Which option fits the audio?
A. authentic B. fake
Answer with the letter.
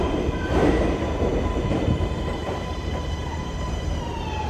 B